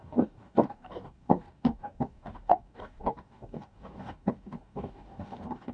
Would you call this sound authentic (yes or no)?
no